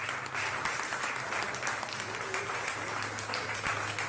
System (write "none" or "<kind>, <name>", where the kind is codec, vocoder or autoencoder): none